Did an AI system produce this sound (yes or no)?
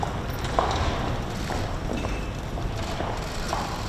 no